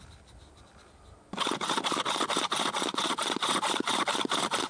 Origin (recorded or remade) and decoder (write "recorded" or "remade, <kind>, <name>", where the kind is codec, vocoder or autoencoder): recorded